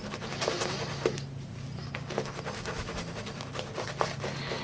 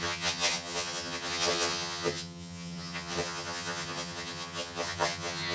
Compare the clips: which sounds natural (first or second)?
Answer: first